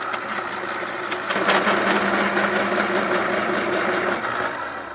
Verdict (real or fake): real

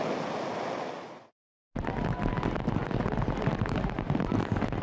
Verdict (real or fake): real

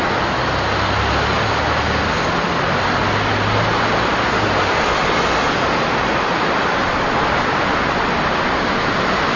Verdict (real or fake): real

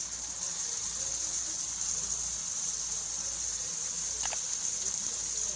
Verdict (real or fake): fake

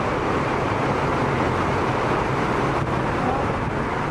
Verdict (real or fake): real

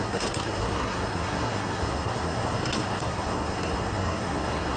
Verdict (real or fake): fake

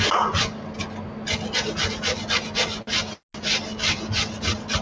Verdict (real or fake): real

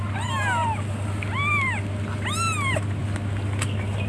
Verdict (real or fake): real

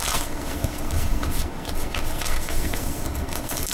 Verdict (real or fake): fake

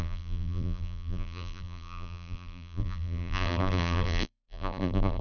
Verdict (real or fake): fake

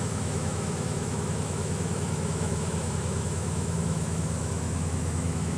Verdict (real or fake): fake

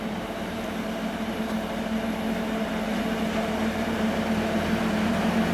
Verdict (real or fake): fake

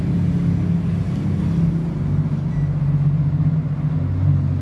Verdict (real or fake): real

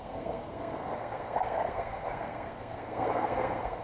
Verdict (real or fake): fake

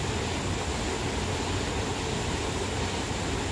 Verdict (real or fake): real